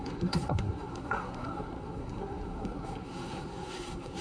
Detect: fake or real fake